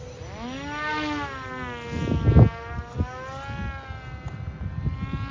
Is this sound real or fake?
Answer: real